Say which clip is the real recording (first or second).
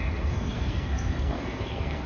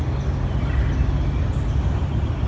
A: second